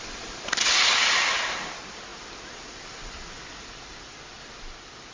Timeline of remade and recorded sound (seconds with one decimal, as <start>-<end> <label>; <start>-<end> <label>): 0.0-5.1 recorded

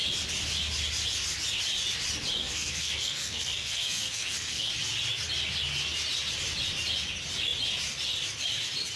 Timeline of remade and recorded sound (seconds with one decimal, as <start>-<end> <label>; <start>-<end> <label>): 0.0-2.4 recorded; 2.4-4.7 remade; 4.7-9.0 recorded